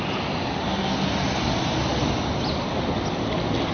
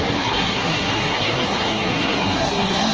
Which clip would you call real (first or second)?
first